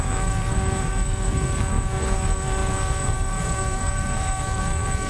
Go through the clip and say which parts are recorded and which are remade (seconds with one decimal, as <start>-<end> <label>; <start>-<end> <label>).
0.0-5.1 remade